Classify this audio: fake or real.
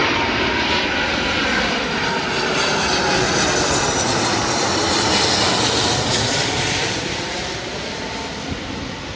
fake